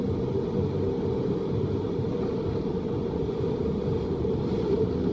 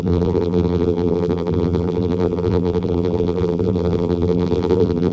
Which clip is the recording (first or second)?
first